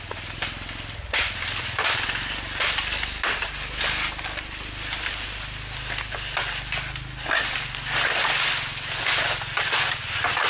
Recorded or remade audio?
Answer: recorded